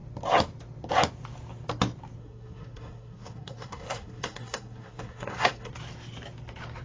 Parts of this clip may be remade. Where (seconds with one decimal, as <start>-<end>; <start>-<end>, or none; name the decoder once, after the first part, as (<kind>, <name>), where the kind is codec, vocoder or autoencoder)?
2.2-5.7 (codec, SNAC)

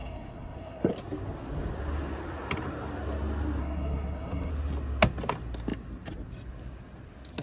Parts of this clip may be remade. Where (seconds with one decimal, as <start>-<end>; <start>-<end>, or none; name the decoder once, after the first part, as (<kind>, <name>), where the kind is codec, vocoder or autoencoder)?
0.0-0.9 (codec, SNAC); 3.6-4.5

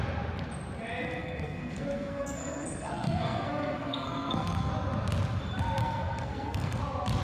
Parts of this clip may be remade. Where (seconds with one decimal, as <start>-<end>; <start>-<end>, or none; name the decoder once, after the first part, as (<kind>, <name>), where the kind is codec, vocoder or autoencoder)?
1.2-4.7 (codec, SNAC); 5.8-6.8

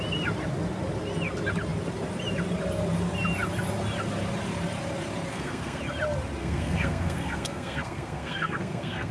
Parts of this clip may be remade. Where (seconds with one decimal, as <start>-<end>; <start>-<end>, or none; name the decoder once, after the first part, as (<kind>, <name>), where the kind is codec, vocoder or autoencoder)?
5.3-5.8 (codec, SNAC); 6.4-9.1

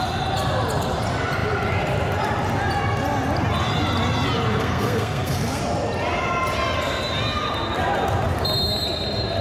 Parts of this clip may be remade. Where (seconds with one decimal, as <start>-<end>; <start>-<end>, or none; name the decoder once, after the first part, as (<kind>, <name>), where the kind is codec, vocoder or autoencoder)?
4.6-5.6 (codec, SNAC)

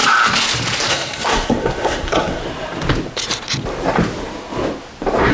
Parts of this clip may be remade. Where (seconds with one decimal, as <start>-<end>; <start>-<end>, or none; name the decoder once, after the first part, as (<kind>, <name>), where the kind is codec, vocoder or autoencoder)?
0.9-2.4 (codec, SNAC)

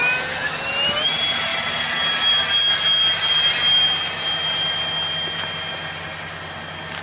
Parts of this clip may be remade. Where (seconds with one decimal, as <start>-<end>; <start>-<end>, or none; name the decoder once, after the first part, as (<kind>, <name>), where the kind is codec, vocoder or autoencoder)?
none

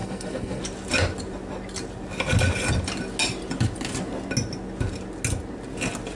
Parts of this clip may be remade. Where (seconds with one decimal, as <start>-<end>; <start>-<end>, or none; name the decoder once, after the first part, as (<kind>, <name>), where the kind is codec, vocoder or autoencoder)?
0.0-0.6 (codec, SNAC)